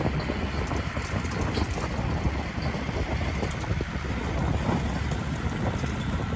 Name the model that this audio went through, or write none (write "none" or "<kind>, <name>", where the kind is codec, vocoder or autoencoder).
none